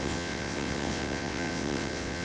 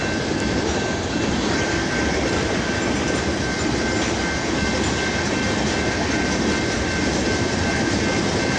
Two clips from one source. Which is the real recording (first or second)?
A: second